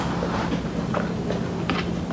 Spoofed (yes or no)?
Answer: no